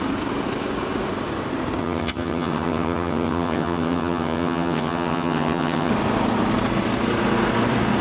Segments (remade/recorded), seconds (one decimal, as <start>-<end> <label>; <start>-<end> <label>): 0.0-1.8 recorded; 1.8-5.9 remade; 5.9-8.0 recorded